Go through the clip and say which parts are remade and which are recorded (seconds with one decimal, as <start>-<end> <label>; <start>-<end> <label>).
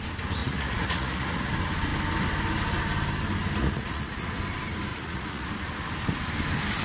0.0-0.4 recorded; 0.4-1.5 remade; 1.5-3.6 recorded; 3.6-4.3 remade; 4.3-4.9 recorded; 4.9-5.5 remade; 5.5-6.8 recorded